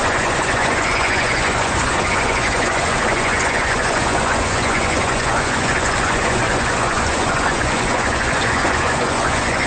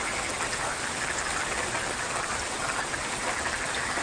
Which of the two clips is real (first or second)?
second